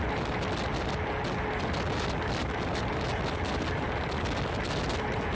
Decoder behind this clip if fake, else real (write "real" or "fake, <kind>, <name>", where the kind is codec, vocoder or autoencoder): real